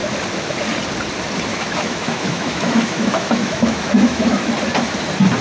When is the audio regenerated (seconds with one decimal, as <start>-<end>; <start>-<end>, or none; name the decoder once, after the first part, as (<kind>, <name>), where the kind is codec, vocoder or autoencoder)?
1.5-4.5 (autoencoder, DAC-VAE)